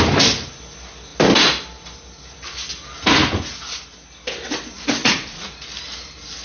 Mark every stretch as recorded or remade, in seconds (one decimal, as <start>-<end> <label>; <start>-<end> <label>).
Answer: 0.0-5.0 recorded; 5.0-5.5 remade; 5.5-6.4 recorded